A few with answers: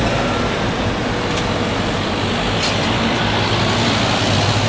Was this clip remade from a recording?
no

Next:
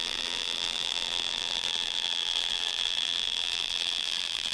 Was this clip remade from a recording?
yes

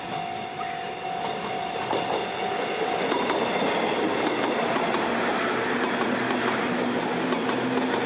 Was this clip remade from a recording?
no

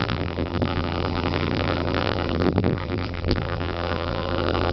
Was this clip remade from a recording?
yes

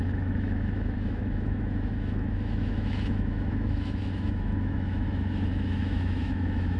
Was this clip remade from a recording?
yes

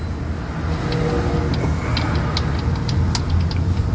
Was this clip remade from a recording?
no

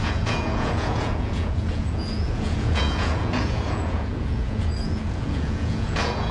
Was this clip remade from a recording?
yes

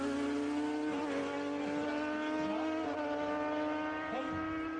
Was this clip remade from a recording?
no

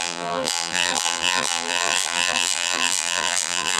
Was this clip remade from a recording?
yes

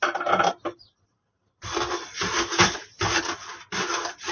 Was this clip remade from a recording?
yes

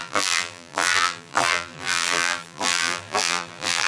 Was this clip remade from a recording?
yes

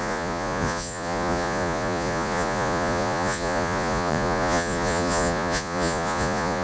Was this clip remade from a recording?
yes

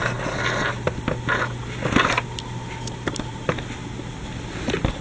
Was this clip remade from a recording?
no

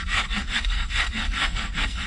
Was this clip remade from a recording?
yes